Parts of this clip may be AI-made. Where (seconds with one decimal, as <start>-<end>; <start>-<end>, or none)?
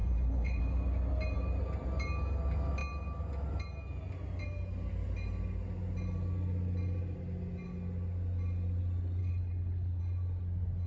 0.0-0.6; 9.2-10.0